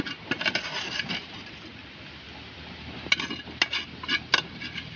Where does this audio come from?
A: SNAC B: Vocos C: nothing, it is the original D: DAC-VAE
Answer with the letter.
C